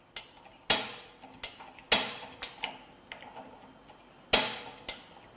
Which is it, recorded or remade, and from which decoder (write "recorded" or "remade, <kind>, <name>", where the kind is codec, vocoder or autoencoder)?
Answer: recorded